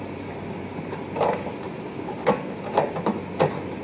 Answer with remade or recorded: recorded